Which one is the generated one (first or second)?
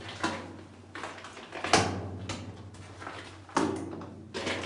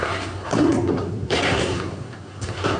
second